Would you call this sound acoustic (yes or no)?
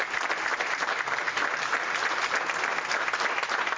yes